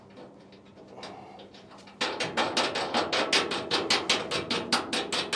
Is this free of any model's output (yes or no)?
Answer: yes